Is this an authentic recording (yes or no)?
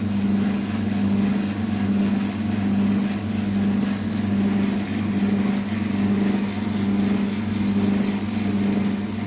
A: yes